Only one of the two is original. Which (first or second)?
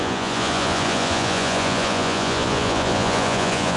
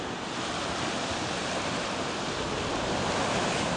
second